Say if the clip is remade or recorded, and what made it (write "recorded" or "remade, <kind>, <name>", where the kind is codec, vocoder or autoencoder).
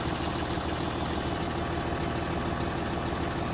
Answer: recorded